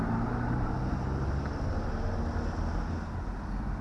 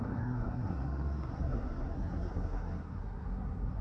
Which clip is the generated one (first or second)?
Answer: second